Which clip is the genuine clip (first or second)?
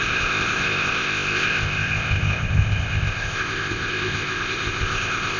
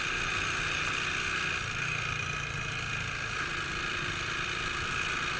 second